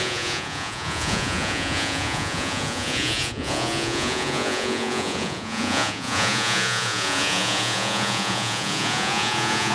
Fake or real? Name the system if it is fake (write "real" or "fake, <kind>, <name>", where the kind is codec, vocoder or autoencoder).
fake, vocoder, Vocos